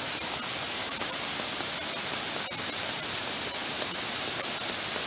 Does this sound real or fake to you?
real